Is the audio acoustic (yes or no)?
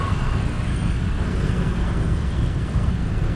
no